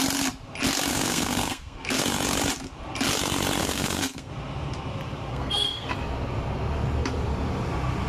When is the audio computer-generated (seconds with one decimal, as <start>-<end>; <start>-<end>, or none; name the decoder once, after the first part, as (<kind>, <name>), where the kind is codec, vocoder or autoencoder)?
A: 0.9-2.0 (codec, SNAC); 3.6-4.3; 5.3-5.9